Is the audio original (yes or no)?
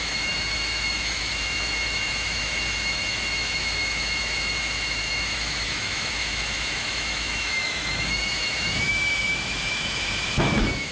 no